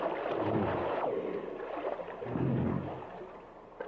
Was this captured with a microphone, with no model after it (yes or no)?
yes